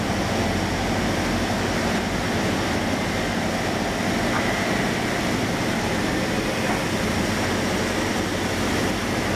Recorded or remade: recorded